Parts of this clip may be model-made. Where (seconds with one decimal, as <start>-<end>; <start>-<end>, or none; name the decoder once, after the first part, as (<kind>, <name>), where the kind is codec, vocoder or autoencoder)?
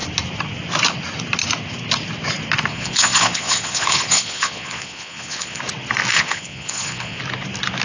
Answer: 2.7-5.6 (vocoder, Vocos); 6.1-7.2